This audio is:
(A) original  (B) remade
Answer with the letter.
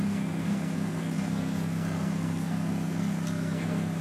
B